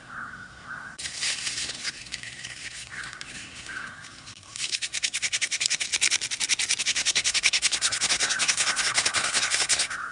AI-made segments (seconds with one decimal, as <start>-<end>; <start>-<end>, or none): 0.0-5.9; 6.8-10.1